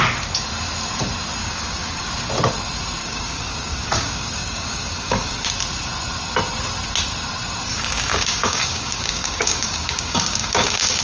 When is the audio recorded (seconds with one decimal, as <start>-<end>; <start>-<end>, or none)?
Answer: 0.0-1.4; 2.1-3.0; 5.5-7.7